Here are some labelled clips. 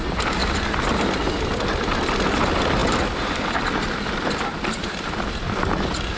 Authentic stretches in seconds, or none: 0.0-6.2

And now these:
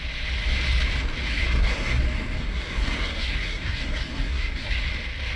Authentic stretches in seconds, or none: 0.0-1.3; 2.0-2.4; 4.9-5.4